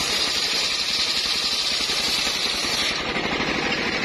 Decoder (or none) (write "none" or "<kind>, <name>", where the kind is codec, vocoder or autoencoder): vocoder, BigVGAN v2